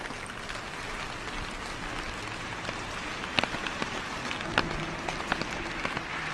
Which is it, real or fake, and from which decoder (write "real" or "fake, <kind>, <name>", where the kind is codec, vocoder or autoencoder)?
real